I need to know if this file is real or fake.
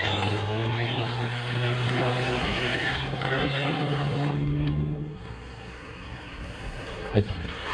fake